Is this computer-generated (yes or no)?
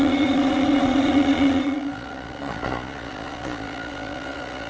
yes